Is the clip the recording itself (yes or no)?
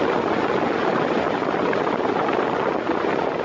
yes